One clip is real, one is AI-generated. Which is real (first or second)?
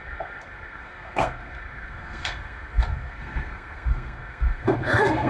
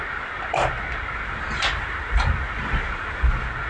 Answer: second